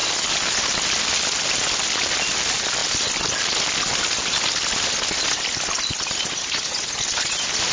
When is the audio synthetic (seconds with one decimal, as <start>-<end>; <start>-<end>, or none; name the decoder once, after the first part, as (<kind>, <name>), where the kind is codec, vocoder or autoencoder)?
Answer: none